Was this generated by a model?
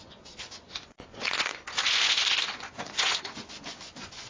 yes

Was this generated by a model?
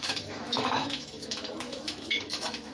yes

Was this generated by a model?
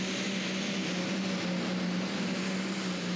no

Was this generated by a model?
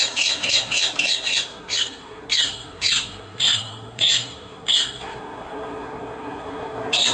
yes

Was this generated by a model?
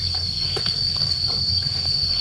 yes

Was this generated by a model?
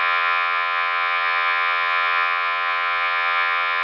yes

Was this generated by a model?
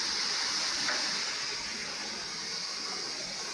no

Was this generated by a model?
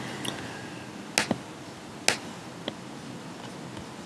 no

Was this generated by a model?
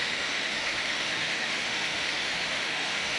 yes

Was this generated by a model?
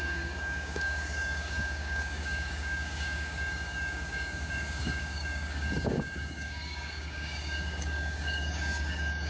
yes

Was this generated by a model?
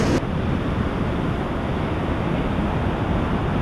no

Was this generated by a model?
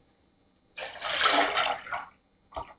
no